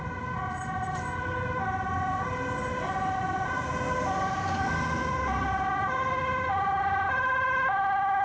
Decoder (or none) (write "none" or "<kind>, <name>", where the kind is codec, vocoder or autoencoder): none